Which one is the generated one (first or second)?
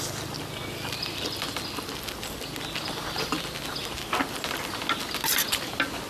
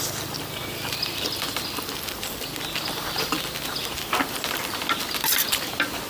second